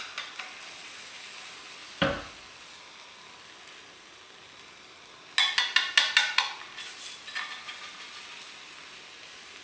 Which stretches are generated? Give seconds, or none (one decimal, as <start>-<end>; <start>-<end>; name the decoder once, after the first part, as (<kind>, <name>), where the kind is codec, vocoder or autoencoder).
1.8-2.3 (vocoder, BigVGAN v2)